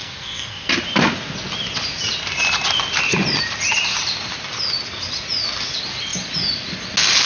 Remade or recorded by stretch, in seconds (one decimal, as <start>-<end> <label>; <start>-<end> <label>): 0.0-0.7 remade; 0.7-7.3 recorded